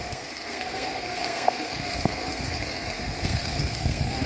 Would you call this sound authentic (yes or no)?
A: no